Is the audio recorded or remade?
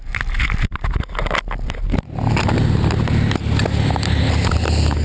recorded